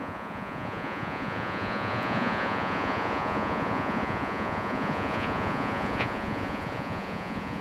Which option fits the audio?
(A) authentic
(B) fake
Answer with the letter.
B